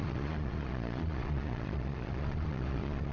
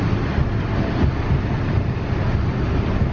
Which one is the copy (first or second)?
first